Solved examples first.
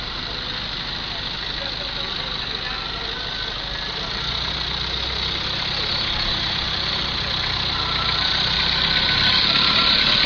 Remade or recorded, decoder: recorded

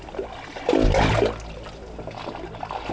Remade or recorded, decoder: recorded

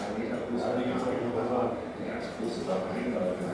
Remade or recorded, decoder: recorded